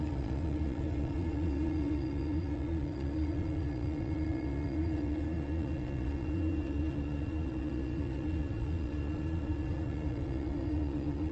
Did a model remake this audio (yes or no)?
yes